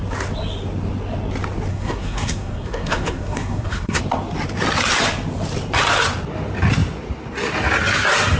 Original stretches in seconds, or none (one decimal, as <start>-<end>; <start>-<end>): 0.0-1.7; 4.0-8.4